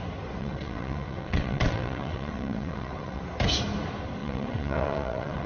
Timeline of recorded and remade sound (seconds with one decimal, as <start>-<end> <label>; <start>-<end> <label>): 0.0-0.4 recorded; 0.4-3.2 remade; 3.2-4.2 recorded; 4.2-5.5 remade